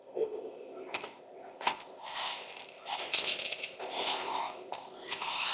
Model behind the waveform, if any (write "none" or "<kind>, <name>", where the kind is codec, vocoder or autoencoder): codec, ZipCodec